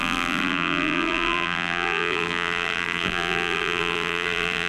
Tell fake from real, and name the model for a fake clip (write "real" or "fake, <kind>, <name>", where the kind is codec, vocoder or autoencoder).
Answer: fake, vocoder, BigVGAN v2